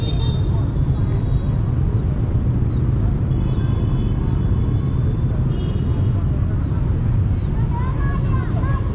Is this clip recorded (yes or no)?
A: yes